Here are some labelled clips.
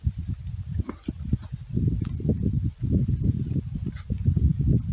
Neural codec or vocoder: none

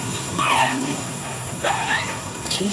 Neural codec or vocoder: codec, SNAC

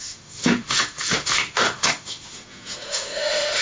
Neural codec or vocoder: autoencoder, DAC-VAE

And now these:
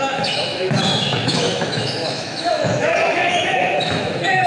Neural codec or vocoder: autoencoder, DAC-VAE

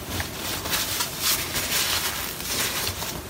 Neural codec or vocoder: vocoder, BigVGAN v2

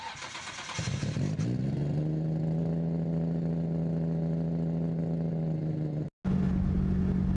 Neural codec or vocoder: none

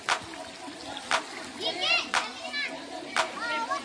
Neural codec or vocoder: none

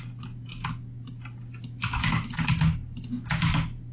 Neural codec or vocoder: none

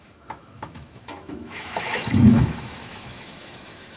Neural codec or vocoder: autoencoder, DAC-VAE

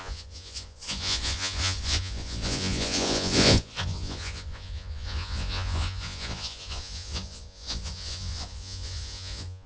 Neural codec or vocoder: vocoder, Vocos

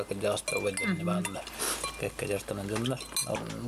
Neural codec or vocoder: none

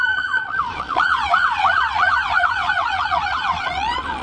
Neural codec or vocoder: vocoder, Vocos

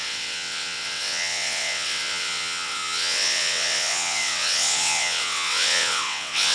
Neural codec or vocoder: vocoder, WaveNeXt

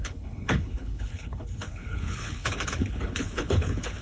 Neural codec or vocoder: codec, HILCodec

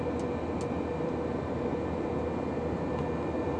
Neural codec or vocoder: none